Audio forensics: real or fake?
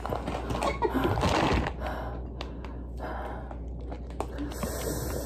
real